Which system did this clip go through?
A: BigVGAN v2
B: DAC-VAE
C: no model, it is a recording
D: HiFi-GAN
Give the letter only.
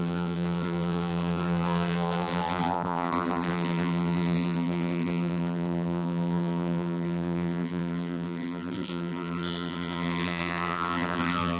A